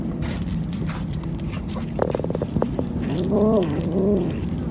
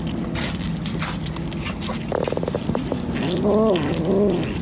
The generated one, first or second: first